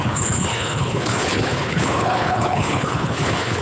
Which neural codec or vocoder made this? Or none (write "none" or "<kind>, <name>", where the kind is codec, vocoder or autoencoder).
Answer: codec, HILCodec